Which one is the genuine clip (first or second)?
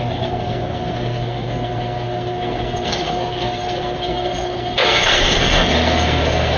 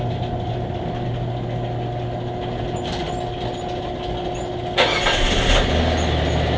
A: second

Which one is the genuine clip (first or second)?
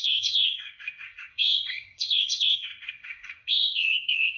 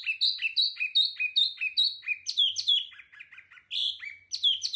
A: second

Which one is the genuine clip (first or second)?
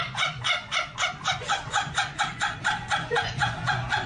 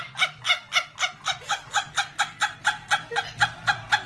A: second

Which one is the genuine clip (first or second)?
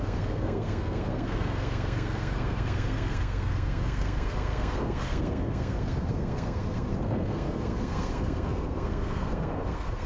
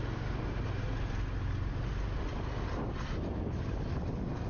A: second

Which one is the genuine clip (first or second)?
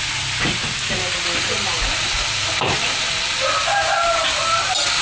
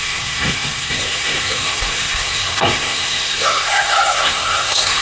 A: first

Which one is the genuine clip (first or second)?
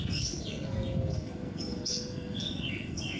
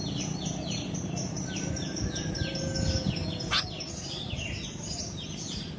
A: second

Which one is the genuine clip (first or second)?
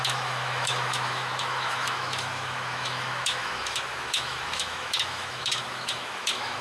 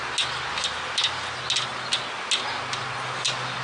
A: second